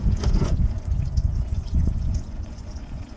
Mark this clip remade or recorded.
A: remade